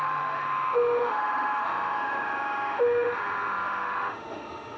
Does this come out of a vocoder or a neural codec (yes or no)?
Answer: yes